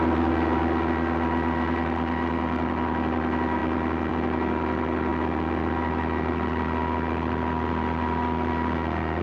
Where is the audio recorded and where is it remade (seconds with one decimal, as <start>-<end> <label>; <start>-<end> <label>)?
0.0-9.2 recorded